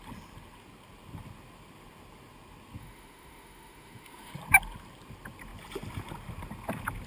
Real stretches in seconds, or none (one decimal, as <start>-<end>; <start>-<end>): 0.0-2.8; 4.3-7.1